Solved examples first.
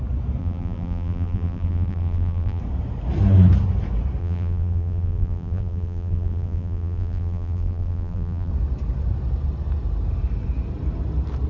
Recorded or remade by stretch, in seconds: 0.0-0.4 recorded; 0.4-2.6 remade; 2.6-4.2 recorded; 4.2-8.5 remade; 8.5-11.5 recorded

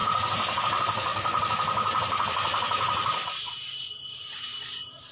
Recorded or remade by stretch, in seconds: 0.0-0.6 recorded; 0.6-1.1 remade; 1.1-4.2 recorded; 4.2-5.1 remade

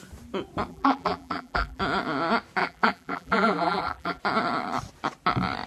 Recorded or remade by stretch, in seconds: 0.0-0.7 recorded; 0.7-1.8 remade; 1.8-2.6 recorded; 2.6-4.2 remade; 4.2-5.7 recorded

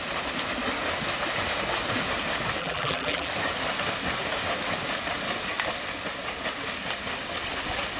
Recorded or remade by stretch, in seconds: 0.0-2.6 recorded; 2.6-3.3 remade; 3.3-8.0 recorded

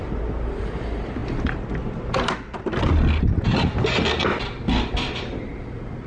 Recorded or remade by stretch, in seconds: 0.0-1.2 remade; 1.2-4.9 recorded; 4.9-6.1 remade